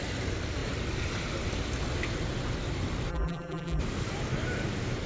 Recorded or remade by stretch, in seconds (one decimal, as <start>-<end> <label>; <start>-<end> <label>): 0.0-3.1 recorded; 3.1-3.8 remade; 3.8-5.1 recorded